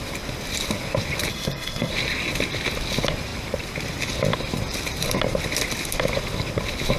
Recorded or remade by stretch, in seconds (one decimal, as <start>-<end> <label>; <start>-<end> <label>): 0.0-1.3 recorded; 1.3-1.9 remade; 1.9-7.0 recorded